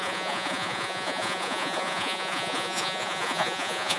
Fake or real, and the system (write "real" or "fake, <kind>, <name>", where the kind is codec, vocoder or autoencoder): fake, vocoder, Vocos